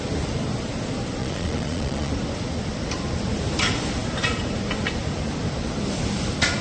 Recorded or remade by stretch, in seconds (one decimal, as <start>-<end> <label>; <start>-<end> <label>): 0.0-1.2 recorded; 1.2-2.1 remade; 2.1-6.6 recorded